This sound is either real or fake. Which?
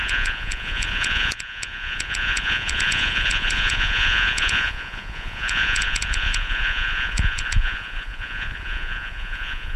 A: fake